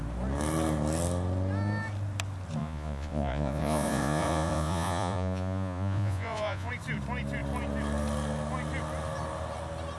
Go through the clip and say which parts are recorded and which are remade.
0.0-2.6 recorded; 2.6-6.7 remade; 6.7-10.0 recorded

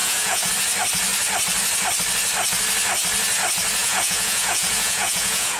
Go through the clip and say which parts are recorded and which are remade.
0.0-0.5 remade; 0.5-3.8 recorded; 3.8-5.6 remade

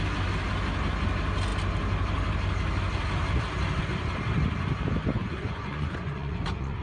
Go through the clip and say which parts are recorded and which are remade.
0.0-5.2 recorded; 5.2-6.8 remade